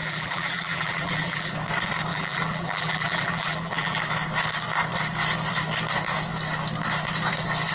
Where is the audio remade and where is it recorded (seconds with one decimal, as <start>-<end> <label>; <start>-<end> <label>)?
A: 0.0-1.5 remade; 1.5-2.1 recorded; 2.1-4.0 remade; 4.0-7.7 recorded